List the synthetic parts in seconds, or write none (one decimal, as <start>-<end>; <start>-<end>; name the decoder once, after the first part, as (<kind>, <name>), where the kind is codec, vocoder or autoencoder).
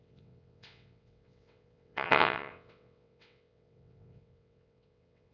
0.0-5.3 (vocoder, WaveNeXt)